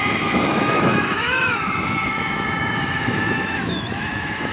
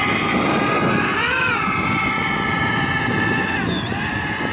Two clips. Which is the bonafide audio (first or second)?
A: second